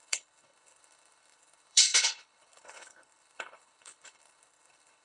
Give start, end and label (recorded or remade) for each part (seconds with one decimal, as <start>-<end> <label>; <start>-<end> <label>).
0.0-5.0 remade